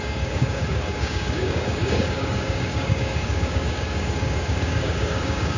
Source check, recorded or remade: remade